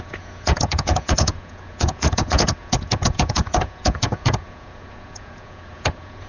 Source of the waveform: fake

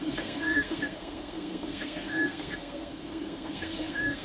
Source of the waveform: fake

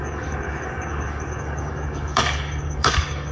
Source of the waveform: fake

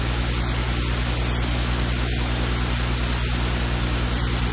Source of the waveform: real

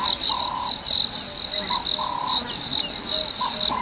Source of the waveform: real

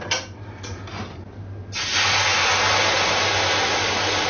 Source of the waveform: real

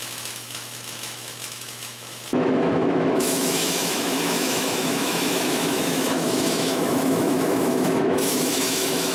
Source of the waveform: fake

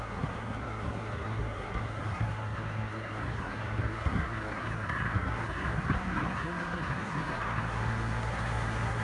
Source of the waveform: fake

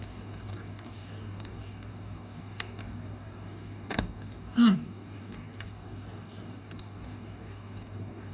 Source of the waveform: fake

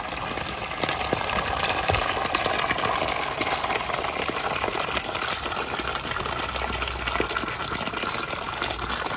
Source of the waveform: real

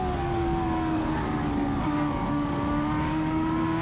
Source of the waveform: fake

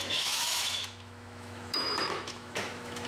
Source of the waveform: fake